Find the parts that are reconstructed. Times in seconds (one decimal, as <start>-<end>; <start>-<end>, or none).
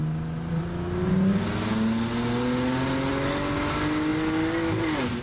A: none